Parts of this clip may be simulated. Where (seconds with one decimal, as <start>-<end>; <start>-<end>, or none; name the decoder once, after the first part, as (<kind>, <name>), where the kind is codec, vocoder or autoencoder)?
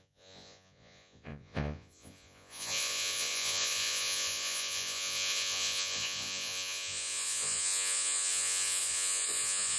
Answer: 0.0-9.8 (vocoder, Vocos)